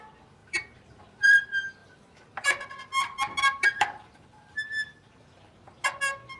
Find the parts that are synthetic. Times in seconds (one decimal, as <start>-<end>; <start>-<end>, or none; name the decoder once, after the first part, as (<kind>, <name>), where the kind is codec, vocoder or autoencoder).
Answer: 0.4-1.0 (vocoder, BigVGAN v2); 1.8-5.5